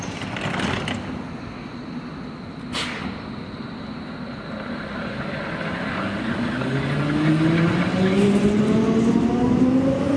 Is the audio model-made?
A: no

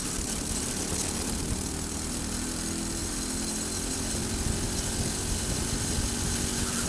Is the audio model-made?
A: no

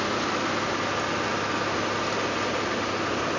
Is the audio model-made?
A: no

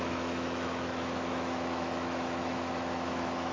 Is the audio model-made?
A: yes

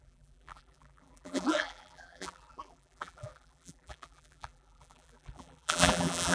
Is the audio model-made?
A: yes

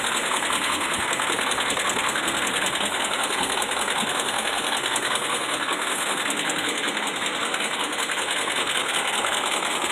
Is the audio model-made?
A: yes